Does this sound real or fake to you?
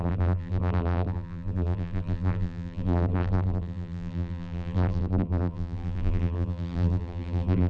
fake